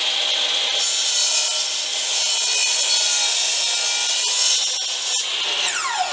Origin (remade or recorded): recorded